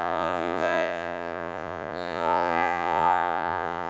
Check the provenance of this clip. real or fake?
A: fake